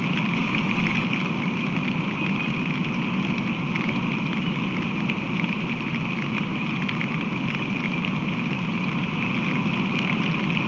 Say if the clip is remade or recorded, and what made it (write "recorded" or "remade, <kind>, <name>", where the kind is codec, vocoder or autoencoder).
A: recorded